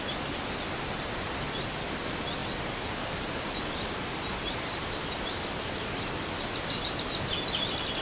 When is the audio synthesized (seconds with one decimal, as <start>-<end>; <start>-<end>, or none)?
2.4-6.0